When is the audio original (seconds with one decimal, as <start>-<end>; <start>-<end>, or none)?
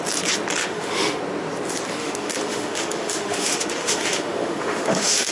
0.0-0.6; 1.2-2.0